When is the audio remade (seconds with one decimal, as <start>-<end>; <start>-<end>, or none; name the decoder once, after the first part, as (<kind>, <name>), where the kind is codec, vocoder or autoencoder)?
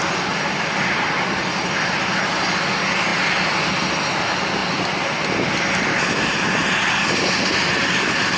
none